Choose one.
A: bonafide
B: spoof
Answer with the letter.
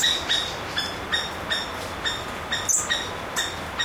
A